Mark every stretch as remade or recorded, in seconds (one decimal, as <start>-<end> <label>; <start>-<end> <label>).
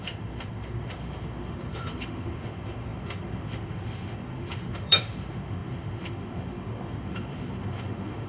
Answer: 0.0-8.3 remade